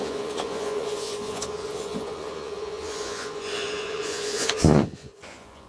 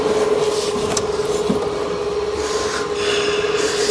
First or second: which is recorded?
second